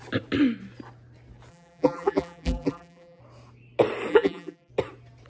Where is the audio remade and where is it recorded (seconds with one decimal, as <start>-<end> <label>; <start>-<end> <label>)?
0.0-1.5 recorded; 1.5-3.2 remade; 3.2-4.1 recorded; 4.1-4.7 remade; 4.7-5.3 recorded